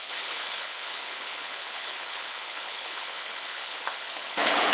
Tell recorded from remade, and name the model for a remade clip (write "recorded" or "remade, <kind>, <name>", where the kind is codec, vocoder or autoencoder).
remade, codec, HILCodec